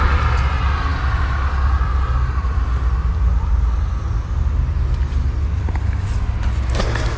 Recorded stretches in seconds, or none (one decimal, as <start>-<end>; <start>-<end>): 0.0-7.2